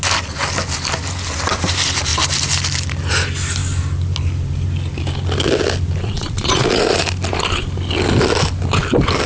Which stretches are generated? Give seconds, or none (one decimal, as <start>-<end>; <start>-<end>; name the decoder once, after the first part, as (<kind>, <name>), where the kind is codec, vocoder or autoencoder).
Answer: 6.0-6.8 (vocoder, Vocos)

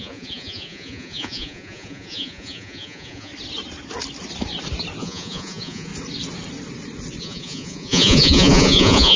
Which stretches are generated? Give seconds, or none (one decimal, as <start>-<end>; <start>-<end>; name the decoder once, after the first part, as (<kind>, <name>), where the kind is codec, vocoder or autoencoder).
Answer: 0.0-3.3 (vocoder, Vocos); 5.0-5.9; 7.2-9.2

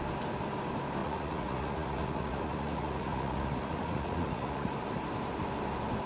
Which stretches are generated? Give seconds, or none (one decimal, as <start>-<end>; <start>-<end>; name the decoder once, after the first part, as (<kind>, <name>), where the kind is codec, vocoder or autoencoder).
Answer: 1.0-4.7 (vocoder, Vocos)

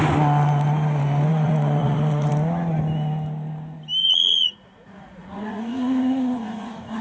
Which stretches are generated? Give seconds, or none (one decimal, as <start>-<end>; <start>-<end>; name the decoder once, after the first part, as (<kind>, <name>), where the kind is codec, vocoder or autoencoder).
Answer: 1.3-2.3 (vocoder, Vocos); 4.0-7.0

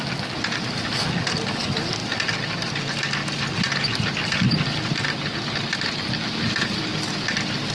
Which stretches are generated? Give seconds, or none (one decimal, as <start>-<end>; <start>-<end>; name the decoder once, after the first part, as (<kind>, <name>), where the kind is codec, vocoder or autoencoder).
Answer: none

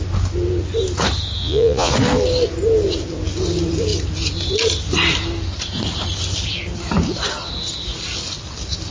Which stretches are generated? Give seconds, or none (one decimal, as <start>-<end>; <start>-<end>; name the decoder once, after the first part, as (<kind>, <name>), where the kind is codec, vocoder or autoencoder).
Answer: 1.4-1.9 (vocoder, Vocos)